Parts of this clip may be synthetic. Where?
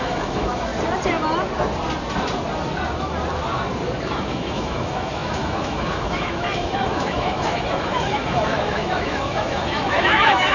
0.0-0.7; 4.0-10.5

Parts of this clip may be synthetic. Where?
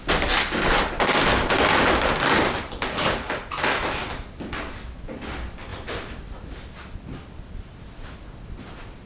none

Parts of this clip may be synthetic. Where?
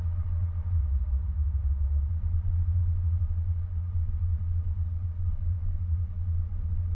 0.0-0.8; 2.1-6.9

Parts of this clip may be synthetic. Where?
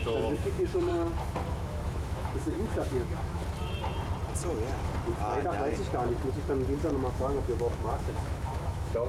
0.0-0.9; 1.5-3.4; 7.1-9.1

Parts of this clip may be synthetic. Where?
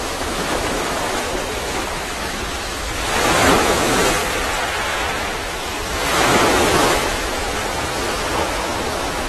0.0-4.2; 4.7-9.3